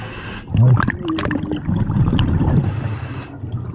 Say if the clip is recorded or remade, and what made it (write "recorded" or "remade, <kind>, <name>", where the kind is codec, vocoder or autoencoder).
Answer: recorded